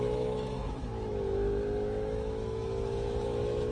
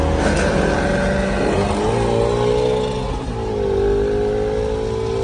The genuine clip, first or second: second